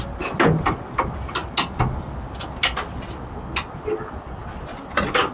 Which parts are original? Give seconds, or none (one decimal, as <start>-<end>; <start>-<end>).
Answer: 0.0-5.3